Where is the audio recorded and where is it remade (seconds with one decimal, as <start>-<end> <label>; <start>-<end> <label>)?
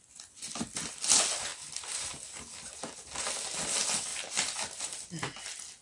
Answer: 0.0-5.8 recorded